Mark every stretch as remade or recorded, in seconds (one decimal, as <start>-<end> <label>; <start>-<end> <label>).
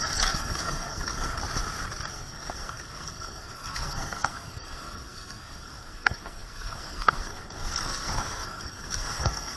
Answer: 0.0-1.3 remade; 1.3-2.1 recorded; 2.1-9.6 remade